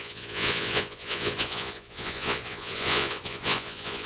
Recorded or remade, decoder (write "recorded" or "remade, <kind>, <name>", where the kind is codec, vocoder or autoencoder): remade, vocoder, Vocos